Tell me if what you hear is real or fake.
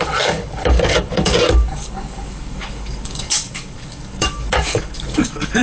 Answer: fake